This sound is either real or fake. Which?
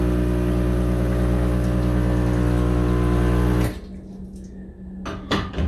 real